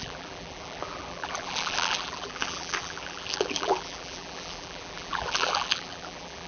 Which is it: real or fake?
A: fake